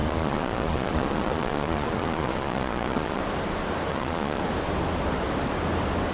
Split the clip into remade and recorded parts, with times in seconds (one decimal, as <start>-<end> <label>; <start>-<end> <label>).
0.0-3.2 remade; 3.2-3.9 recorded; 3.9-4.4 remade; 4.4-6.1 recorded